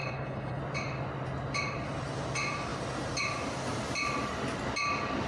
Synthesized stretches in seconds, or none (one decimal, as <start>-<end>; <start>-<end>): 0.0-0.6